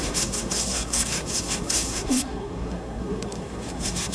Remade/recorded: remade